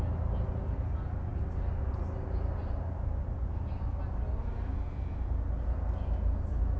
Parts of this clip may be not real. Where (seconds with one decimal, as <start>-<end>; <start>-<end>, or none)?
none